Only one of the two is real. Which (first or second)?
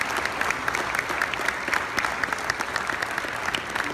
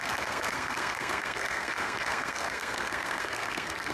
first